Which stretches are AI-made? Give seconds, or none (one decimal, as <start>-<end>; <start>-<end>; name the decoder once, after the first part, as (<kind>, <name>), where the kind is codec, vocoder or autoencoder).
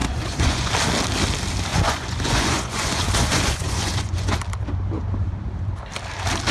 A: 0.0-0.7 (vocoder, Vocos); 1.7-4.4